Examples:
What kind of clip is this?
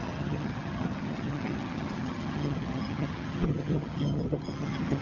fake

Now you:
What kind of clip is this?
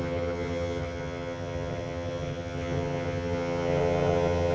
fake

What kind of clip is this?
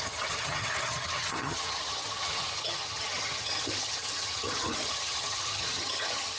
fake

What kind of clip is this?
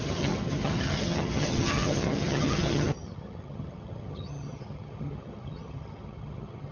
fake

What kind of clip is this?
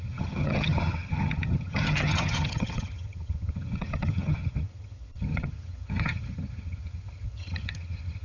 fake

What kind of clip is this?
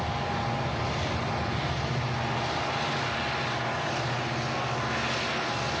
real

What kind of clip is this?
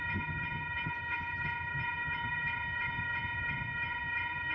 fake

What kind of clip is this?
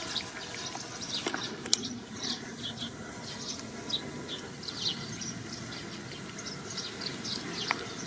real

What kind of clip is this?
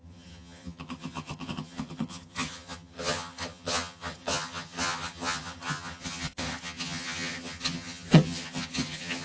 fake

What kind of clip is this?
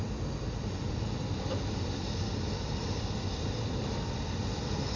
real